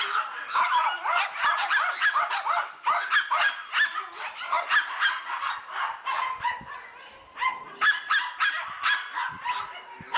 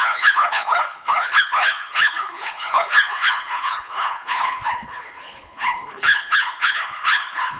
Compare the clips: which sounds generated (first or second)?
second